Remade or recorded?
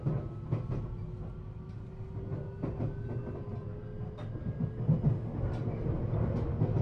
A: recorded